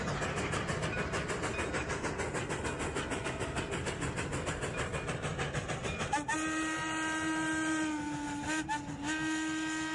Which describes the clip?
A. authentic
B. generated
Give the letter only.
A